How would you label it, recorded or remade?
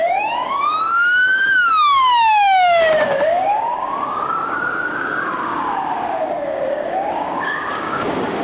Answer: remade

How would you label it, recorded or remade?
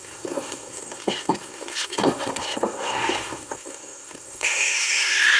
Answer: remade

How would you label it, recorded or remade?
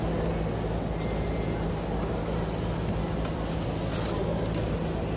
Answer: recorded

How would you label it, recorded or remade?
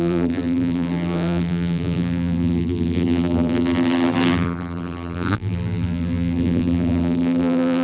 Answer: remade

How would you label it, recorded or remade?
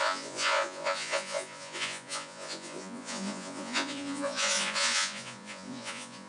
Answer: remade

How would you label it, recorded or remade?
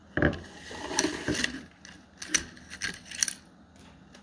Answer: recorded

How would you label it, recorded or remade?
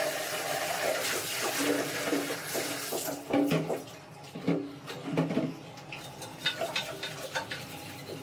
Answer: recorded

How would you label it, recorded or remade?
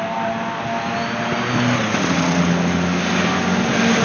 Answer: recorded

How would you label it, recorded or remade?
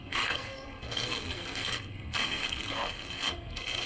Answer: remade